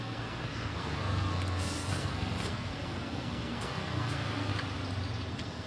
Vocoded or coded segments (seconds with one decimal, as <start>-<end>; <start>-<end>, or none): 0.0-4.5; 5.3-5.7